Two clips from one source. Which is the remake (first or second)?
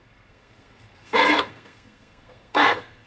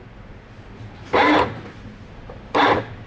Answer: first